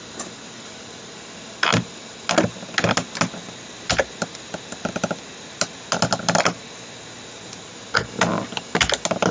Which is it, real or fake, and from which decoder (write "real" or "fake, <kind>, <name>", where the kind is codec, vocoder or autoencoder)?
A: real